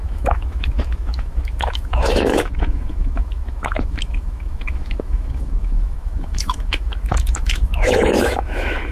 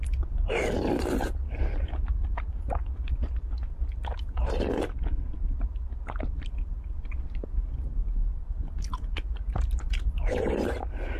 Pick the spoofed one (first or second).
first